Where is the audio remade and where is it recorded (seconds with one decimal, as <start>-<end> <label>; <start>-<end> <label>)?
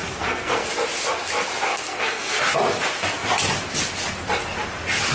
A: 0.0-0.7 remade; 0.7-1.7 recorded; 1.7-2.4 remade; 2.4-5.1 recorded